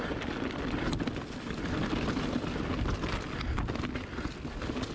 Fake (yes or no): no